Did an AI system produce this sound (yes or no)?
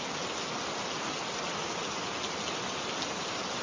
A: no